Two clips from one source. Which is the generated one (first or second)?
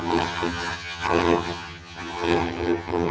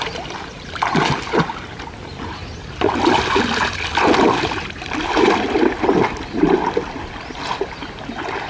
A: first